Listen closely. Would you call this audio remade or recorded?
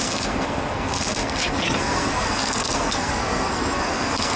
remade